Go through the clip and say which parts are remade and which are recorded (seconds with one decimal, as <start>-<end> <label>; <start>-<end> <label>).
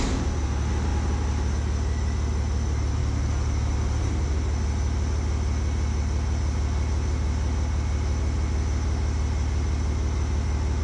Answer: 0.0-10.8 recorded